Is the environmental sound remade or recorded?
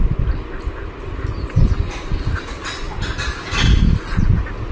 recorded